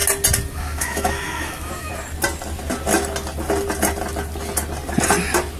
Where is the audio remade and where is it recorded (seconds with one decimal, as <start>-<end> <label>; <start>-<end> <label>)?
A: 0.0-0.5 recorded; 0.5-1.9 remade; 1.9-5.6 recorded